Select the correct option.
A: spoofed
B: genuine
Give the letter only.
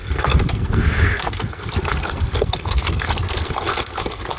A